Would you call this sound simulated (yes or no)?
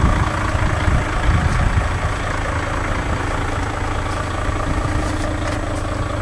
no